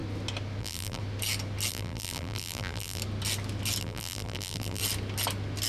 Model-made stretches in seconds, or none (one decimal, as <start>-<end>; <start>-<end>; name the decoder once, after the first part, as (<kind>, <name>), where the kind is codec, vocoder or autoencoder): 0.6-1.0 (vocoder, BigVGAN v2); 1.7-3.0; 3.8-4.8